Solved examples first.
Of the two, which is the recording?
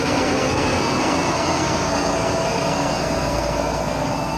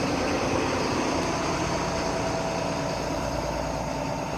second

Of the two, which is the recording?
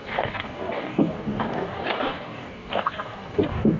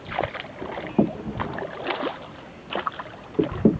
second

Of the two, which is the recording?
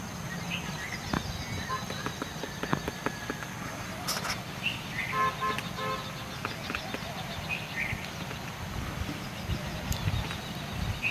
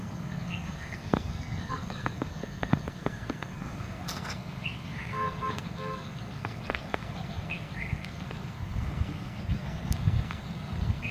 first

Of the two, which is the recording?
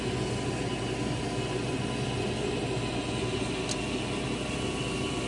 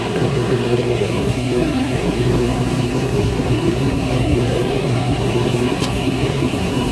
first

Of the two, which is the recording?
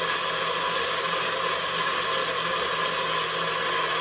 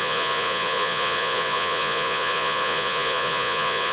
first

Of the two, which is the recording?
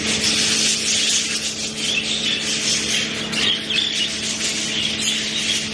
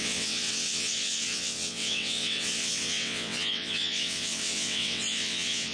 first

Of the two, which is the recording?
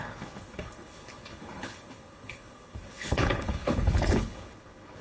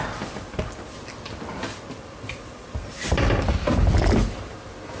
second